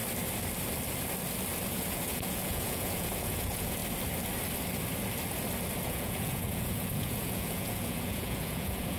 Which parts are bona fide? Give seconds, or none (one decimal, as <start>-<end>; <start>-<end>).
0.0-1.7; 3.8-5.8